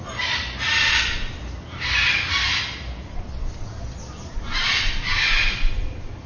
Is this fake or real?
real